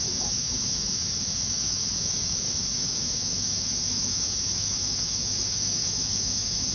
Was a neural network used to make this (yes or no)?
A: yes